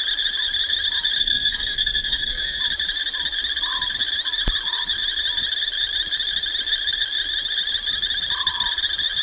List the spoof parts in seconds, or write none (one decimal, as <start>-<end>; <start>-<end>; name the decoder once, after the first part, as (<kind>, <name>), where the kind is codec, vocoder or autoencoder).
1.2-2.6 (codec, SNAC)